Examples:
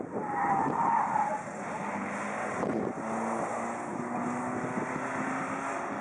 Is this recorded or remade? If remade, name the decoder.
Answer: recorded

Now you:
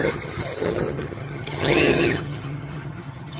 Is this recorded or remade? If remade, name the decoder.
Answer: remade, vocoder, HiFi-GAN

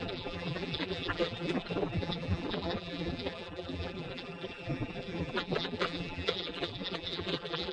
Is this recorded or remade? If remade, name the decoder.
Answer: remade, vocoder, BigVGAN v2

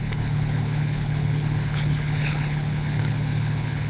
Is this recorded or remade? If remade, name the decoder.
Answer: remade, codec, HILCodec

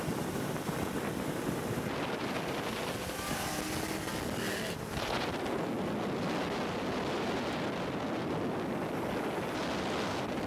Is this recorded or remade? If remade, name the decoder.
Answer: recorded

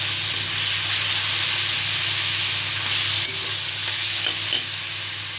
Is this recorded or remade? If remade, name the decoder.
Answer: recorded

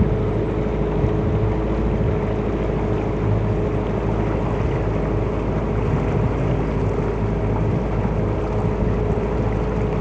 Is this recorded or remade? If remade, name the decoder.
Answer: recorded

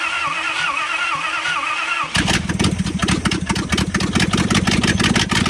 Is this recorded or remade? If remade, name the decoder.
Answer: recorded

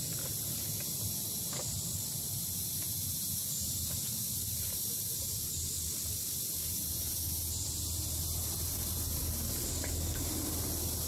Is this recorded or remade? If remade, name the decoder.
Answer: recorded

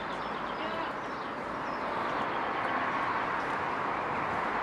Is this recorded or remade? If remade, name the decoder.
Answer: recorded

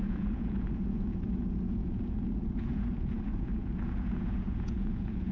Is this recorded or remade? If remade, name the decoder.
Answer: remade, vocoder, Vocos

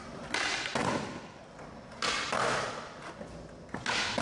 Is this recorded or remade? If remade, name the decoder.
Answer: recorded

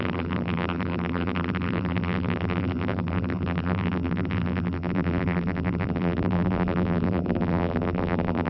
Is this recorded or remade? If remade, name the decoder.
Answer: remade, vocoder, BigVGAN v2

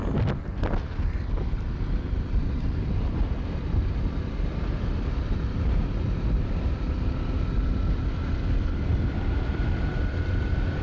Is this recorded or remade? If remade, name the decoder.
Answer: remade, vocoder, BigVGAN v2